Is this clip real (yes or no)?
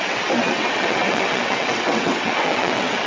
no